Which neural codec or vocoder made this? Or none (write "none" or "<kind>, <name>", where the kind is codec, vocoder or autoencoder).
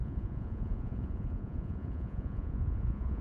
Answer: vocoder, Vocos